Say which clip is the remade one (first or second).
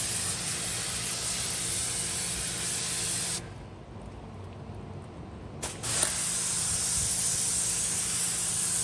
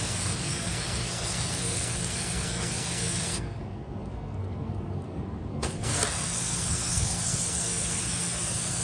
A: second